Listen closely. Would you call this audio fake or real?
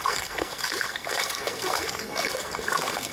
fake